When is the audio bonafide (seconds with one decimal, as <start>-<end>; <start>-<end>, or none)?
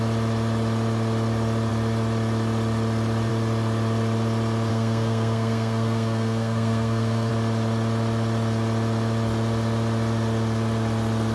0.0-4.7; 7.3-11.3